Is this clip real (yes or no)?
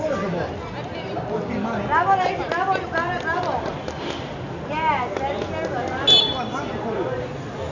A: yes